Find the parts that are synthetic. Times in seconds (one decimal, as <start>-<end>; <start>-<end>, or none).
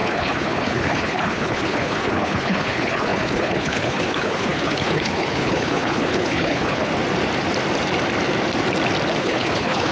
0.0-6.9; 9.2-9.9